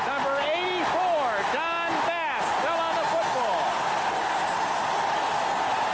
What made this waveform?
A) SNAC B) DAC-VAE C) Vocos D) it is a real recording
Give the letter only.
D